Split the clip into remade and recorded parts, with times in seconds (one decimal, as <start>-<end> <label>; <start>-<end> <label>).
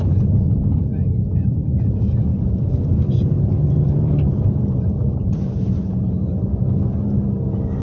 0.0-2.3 recorded; 2.3-6.6 remade; 6.6-7.8 recorded